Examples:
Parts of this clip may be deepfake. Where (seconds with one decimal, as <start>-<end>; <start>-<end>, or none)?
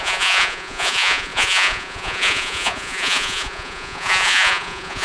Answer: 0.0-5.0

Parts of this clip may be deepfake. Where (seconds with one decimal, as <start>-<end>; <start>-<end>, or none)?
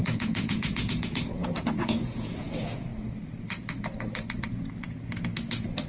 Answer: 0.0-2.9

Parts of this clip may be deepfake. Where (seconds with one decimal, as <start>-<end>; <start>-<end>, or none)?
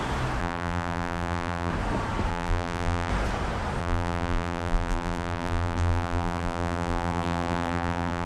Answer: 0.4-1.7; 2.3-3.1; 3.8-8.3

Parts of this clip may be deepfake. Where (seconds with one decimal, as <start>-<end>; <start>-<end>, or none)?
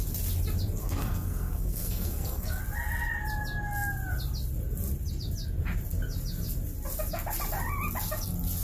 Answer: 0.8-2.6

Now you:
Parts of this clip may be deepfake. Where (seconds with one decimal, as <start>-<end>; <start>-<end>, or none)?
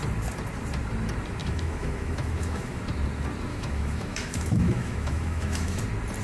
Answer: 1.4-2.8; 3.5-5.8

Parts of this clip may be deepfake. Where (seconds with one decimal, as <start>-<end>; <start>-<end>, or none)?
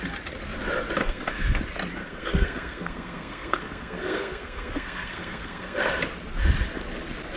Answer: 1.0-1.6; 2.0-5.9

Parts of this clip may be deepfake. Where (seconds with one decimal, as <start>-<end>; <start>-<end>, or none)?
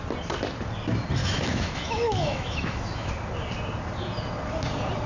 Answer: 1.2-3.1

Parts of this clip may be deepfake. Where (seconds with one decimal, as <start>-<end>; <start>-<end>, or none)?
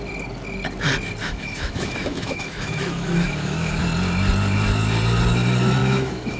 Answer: 1.2-3.8; 5.8-6.4